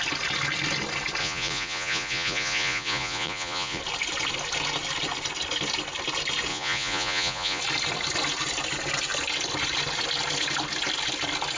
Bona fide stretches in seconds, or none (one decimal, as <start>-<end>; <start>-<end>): 0.0-1.2; 3.8-6.5; 7.6-11.6